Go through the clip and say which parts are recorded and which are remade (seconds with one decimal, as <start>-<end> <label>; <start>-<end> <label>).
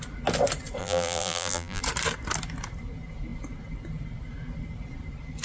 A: 0.0-0.8 recorded; 0.8-1.8 remade; 1.8-5.4 recorded